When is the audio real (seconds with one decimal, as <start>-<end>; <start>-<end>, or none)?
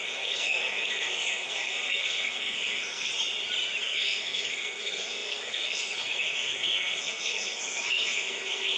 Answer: 3.1-3.8